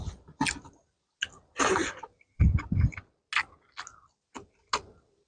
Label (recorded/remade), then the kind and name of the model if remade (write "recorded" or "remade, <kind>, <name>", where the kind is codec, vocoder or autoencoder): recorded